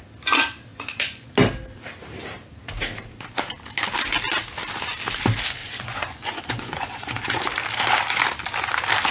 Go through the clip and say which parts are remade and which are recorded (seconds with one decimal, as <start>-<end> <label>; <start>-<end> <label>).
0.0-0.7 recorded; 0.7-1.3 remade; 1.3-5.6 recorded; 5.6-7.5 remade; 7.5-9.1 recorded